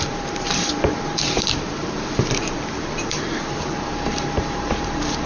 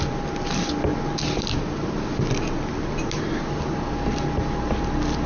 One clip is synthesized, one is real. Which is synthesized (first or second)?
first